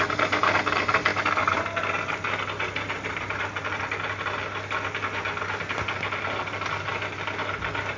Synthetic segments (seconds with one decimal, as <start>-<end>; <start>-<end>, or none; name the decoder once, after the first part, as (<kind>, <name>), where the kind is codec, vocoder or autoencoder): none